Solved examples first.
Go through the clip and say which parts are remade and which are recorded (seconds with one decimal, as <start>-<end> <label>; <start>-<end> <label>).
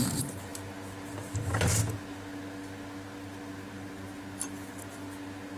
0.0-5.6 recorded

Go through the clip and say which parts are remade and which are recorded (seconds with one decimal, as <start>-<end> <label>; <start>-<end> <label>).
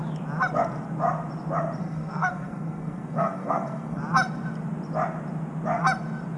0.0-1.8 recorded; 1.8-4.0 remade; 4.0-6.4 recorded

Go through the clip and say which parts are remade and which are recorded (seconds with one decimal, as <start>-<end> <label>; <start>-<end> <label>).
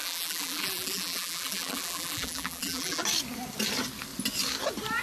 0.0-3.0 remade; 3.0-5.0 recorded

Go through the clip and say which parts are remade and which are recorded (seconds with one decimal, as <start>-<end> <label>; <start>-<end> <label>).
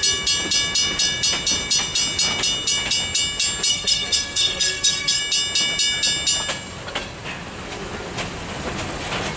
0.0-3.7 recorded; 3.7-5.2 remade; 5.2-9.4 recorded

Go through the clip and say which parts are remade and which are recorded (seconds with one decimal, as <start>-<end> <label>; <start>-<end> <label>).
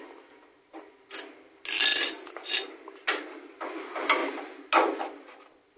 0.0-5.8 recorded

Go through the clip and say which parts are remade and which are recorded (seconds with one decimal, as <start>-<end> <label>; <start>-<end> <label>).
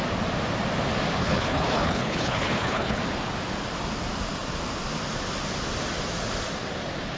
0.0-1.2 recorded; 1.2-3.0 remade; 3.0-7.2 recorded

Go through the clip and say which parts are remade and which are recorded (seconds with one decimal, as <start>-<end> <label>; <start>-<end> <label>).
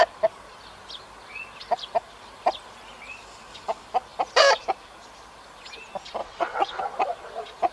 0.0-6.2 recorded; 6.2-6.8 remade; 6.8-7.7 recorded